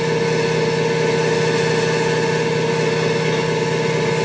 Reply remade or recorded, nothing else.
recorded